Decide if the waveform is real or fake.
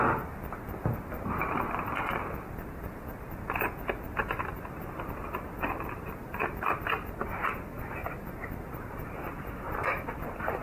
fake